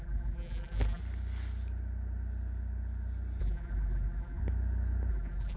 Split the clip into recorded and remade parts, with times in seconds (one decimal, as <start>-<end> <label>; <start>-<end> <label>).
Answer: 0.0-1.0 remade; 1.0-3.4 recorded; 3.4-4.4 remade; 4.4-5.1 recorded; 5.1-5.6 remade

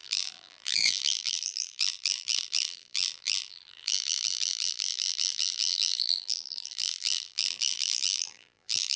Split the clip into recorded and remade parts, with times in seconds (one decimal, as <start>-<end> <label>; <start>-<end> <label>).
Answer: 0.0-9.0 remade

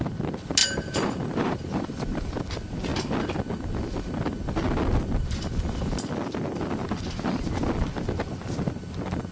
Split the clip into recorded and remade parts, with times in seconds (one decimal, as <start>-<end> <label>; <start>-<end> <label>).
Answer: 0.0-0.6 recorded; 0.6-2.4 remade; 2.4-9.3 recorded

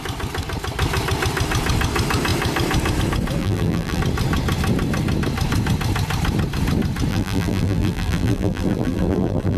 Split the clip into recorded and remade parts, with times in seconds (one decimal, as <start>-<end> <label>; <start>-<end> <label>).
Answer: 0.0-3.4 recorded; 3.4-4.0 remade; 4.0-7.1 recorded; 7.1-9.6 remade

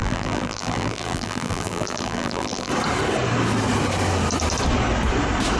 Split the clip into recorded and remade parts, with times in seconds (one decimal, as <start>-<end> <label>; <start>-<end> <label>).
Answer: 0.0-2.7 remade; 2.7-5.6 recorded